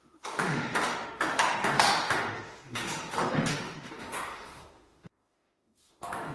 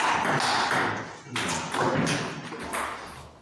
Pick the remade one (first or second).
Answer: first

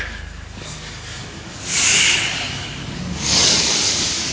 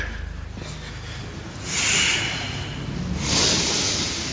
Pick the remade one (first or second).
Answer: first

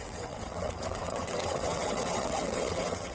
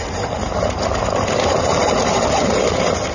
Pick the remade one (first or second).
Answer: first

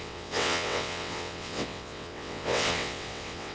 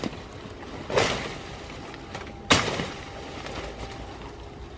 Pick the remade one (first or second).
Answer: first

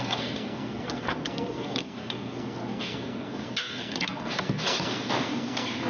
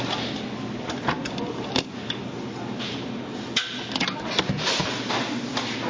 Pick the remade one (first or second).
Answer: first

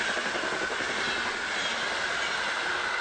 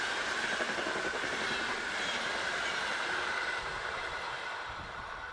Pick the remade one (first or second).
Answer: second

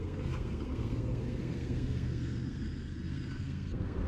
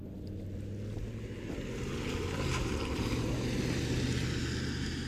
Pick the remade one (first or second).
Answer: first